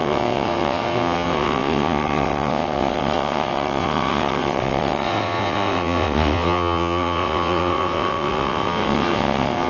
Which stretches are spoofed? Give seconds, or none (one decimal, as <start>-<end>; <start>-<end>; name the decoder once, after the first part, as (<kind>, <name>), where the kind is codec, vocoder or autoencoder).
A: 0.0-9.7 (vocoder, WaveNeXt)